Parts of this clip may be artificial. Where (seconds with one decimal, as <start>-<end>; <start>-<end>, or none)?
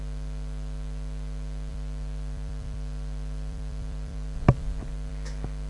1.7-5.1